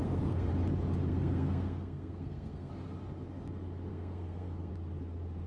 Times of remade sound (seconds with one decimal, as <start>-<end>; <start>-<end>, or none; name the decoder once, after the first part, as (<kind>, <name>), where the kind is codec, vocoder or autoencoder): 0.0-0.5 (codec, SNAC); 1.1-2.7; 3.9-4.7